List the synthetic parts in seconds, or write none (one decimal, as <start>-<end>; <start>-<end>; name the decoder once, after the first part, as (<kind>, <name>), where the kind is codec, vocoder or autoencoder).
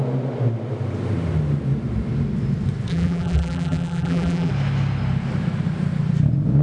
2.9-4.5 (vocoder, BigVGAN v2)